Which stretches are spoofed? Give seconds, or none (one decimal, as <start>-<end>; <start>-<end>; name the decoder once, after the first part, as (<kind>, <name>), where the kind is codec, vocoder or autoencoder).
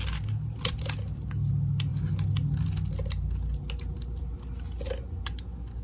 none